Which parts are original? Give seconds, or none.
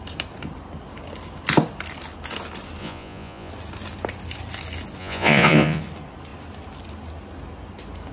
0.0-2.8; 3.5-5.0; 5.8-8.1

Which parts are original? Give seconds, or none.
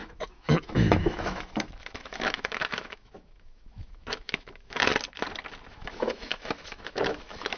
4.9-5.7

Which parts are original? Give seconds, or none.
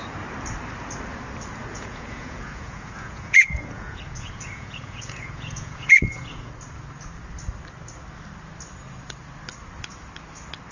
0.0-1.7; 6.5-10.7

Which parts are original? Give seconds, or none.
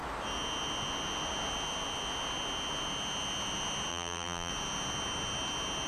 0.0-3.9; 4.5-5.9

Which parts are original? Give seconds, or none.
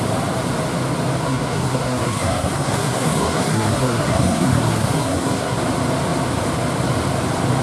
0.0-1.2; 5.6-7.6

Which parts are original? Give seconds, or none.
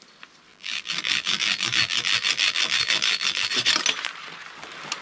0.0-0.5; 3.5-5.0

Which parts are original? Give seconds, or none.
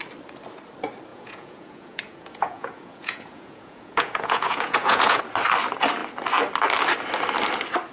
0.0-1.1; 5.2-7.9